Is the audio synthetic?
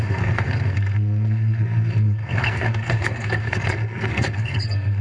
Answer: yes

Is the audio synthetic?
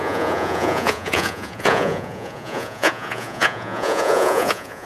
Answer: yes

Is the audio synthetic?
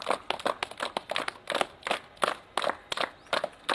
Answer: no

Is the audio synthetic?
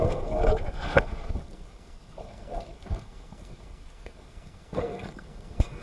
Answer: yes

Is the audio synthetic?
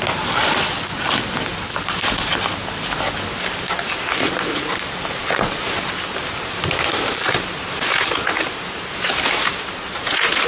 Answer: no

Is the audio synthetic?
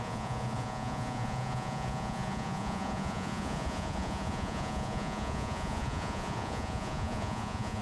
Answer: yes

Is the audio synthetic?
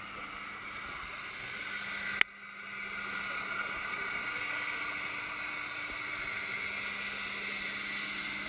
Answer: no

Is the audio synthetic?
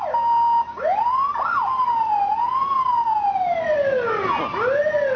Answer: no